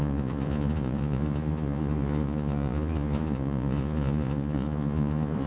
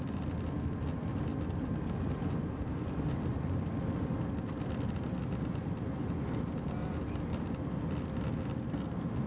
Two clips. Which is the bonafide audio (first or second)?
second